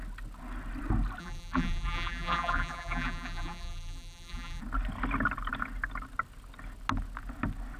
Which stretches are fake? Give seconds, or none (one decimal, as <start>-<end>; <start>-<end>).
1.2-4.6

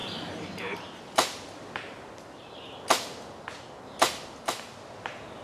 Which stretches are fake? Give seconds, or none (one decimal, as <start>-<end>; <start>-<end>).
0.0-1.0

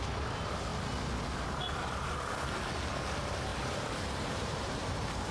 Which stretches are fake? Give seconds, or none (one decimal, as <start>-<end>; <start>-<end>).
3.5-5.3

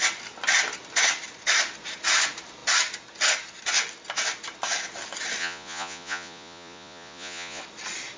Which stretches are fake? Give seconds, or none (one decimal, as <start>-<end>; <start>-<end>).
5.4-7.6